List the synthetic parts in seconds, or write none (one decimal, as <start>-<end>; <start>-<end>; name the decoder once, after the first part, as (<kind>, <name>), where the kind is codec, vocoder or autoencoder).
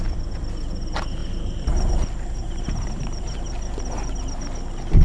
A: 1.2-1.9 (vocoder, BigVGAN v2); 2.4-3.6